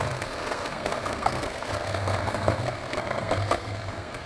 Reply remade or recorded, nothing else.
remade